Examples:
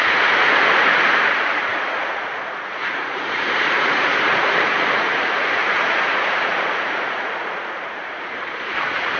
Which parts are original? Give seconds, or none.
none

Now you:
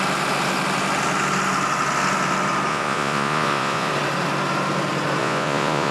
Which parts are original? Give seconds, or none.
0.0-2.7; 3.9-5.2